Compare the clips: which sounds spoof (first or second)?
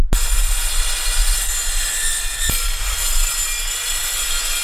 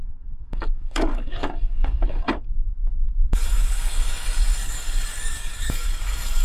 second